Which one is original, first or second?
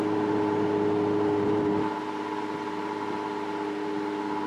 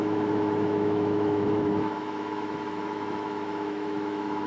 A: first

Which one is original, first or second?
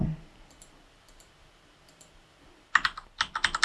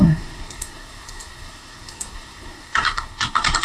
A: first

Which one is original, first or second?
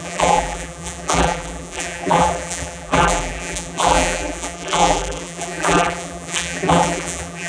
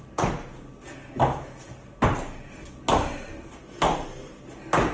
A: second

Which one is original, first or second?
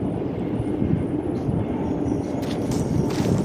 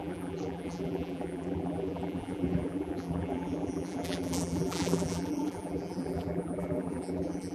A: first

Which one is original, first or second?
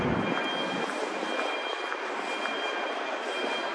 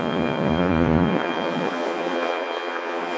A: first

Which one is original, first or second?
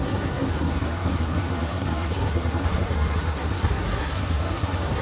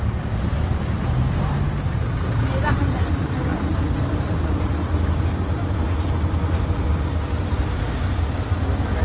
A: second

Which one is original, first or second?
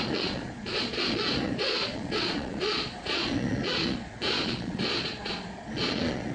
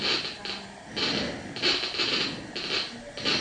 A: second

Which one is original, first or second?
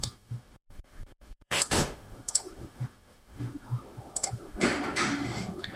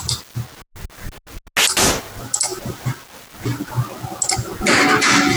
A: second